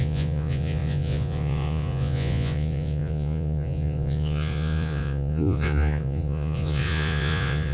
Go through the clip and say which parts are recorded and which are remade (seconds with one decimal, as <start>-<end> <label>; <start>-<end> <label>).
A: 0.0-7.7 remade